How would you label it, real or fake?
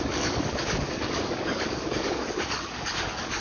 fake